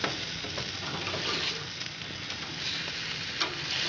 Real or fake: real